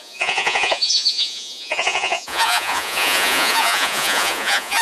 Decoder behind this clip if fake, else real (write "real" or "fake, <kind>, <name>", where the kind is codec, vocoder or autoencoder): fake, vocoder, Vocos